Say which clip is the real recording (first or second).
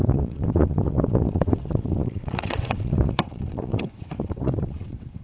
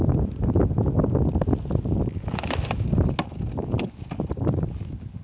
second